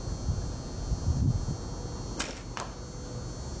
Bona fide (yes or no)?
yes